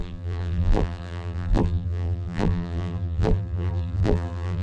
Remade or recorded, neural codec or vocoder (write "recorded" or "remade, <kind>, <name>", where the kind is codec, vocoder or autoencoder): remade, vocoder, BigVGAN v2